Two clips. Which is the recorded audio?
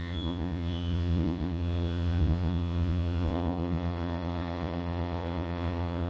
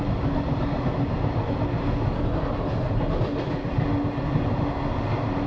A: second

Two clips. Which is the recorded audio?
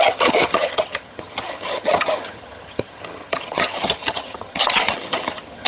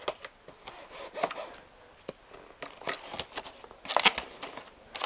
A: second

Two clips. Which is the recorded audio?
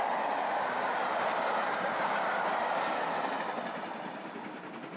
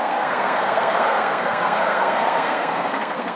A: first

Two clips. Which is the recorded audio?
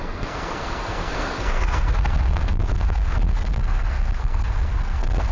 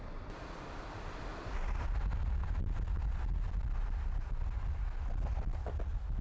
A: second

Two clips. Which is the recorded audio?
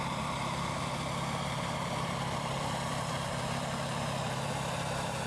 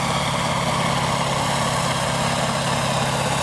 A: second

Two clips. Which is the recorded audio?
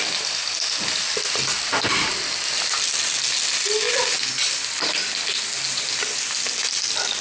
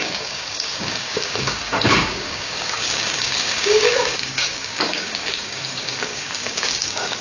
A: first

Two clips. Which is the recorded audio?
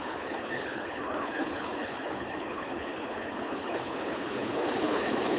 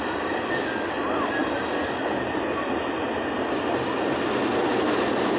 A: second